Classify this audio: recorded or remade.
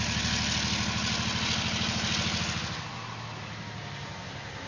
recorded